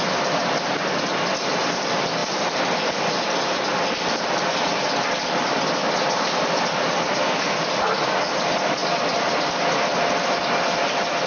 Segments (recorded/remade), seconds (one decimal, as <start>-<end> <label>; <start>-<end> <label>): 0.0-2.2 recorded; 2.2-3.1 remade; 3.1-3.7 recorded; 3.7-8.0 remade; 8.0-11.3 recorded